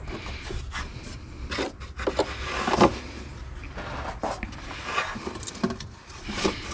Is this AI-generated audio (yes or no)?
no